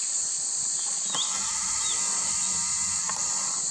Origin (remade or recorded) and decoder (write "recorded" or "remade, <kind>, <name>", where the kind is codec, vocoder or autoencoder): recorded